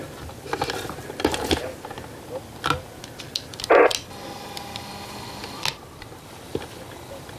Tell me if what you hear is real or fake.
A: real